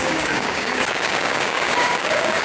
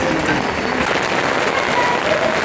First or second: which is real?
second